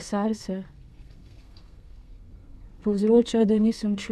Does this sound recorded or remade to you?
remade